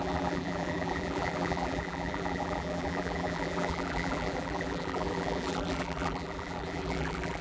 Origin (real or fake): fake